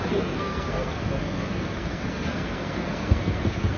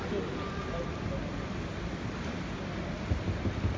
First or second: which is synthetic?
first